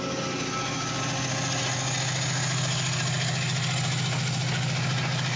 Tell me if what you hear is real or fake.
real